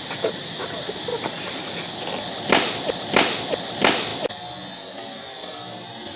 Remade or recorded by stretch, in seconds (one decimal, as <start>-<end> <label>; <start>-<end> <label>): 0.0-6.2 recorded